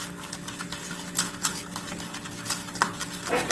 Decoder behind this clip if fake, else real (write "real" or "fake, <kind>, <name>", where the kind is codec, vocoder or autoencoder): real